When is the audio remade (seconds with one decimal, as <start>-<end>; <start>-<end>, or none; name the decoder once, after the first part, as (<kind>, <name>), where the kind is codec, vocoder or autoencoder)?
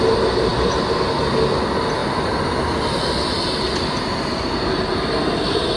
none